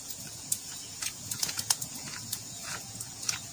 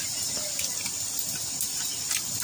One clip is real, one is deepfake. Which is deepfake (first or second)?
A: first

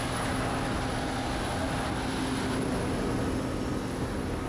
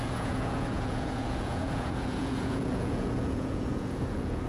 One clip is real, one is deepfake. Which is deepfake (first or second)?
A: second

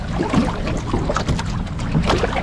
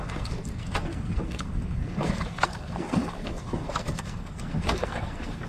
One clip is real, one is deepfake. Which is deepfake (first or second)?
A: second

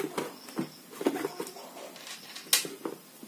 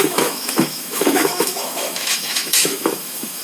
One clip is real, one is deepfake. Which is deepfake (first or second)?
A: second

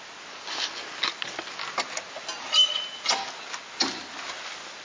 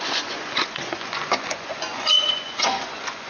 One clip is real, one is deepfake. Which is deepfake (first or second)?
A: second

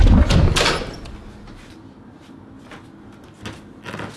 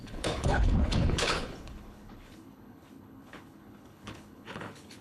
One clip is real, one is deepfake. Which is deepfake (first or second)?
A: second